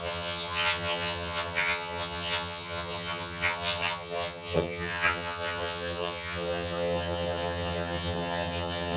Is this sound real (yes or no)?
no